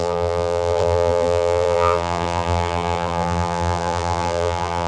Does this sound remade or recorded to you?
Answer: remade